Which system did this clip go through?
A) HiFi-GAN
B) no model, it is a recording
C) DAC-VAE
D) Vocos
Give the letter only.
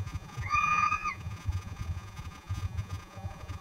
D